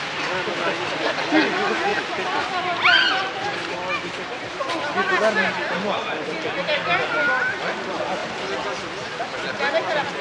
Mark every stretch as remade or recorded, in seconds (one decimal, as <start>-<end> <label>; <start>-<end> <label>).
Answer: 0.0-10.2 recorded